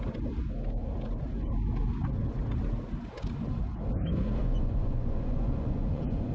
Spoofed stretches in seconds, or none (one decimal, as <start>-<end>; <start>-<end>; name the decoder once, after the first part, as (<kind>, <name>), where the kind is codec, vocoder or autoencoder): 4.4-6.3 (vocoder, Vocos)